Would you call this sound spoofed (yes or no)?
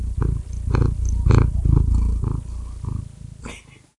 no